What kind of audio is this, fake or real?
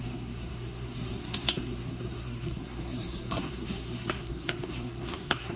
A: fake